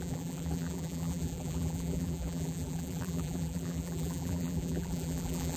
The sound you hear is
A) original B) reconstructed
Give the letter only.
B